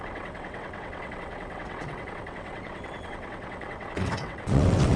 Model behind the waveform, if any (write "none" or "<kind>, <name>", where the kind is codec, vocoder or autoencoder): vocoder, WaveNeXt